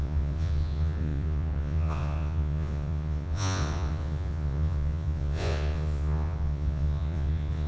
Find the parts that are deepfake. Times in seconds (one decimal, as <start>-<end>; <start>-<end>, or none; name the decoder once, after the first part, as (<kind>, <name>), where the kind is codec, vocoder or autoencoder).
0.0-7.7 (vocoder, Vocos)